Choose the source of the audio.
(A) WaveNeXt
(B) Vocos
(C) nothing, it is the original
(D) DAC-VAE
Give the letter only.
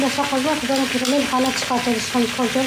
C